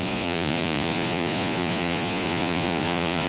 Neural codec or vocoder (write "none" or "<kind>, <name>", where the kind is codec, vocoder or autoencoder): vocoder, Vocos